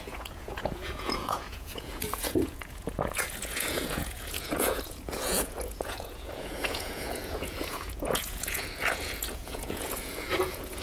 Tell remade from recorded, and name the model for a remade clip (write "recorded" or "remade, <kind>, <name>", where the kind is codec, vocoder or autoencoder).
remade, vocoder, Vocos